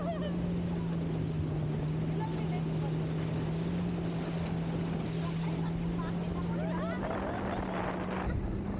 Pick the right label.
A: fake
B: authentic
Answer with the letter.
B